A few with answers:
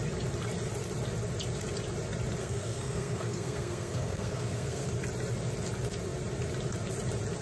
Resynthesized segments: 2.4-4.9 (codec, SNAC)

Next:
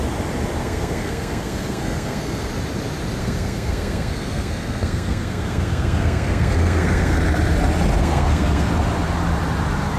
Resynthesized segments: 0.6-2.5 (codec, SNAC); 3.2-7.2; 8.0-8.7